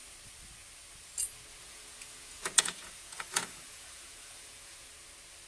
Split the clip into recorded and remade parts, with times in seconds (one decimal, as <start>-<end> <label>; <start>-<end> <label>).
0.0-1.6 recorded; 1.6-4.9 remade; 4.9-5.5 recorded